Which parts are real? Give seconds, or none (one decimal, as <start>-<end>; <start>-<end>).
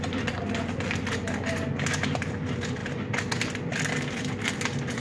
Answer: 0.0-5.0